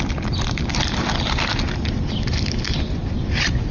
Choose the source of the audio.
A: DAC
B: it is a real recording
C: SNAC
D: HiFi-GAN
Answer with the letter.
B